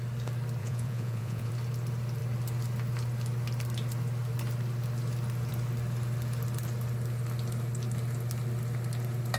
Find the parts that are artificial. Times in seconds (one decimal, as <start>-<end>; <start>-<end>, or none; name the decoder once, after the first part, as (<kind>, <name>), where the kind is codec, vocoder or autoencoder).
0.6-1.5 (vocoder, Vocos)